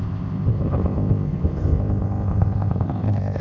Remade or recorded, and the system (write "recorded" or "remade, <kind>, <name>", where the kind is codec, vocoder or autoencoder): remade, codec, ZipCodec